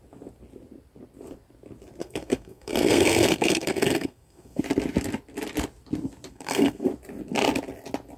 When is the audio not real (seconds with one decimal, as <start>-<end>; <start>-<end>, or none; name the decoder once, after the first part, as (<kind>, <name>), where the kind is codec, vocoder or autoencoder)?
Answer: 2.0-4.6 (codec, SNAC); 6.3-6.9